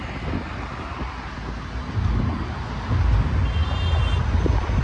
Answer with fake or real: real